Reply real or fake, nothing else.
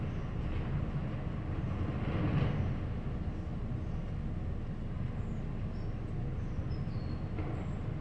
real